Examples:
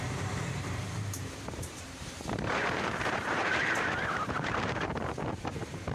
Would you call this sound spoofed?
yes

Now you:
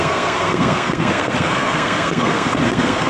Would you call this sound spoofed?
yes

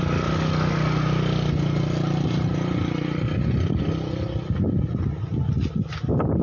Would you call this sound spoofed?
no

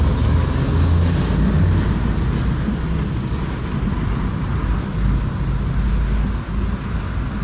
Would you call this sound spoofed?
no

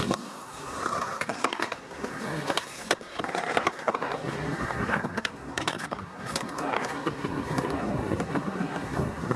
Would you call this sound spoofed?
yes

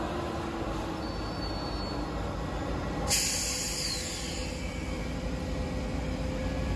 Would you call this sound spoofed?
no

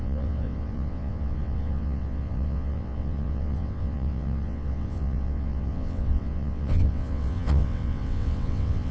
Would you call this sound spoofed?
yes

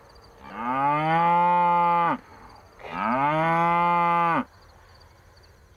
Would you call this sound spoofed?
no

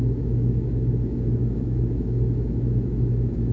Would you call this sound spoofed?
yes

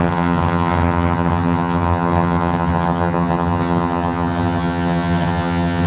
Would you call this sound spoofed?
yes